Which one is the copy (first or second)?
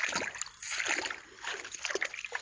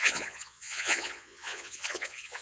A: second